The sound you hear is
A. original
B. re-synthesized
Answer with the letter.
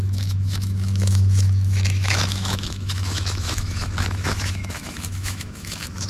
B